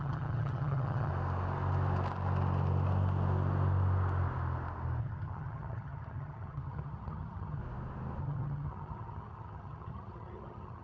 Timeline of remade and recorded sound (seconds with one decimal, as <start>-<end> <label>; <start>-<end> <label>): 0.0-1.1 remade; 1.1-5.0 recorded; 5.0-7.6 remade; 7.6-8.2 recorded; 8.2-10.8 remade